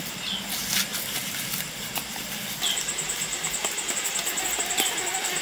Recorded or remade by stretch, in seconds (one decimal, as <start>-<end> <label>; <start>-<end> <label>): 0.0-5.4 recorded